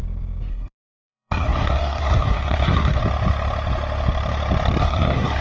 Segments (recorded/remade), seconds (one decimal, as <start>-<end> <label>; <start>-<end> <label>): 0.0-0.5 recorded; 0.5-3.0 remade; 3.0-4.8 recorded; 4.8-5.4 remade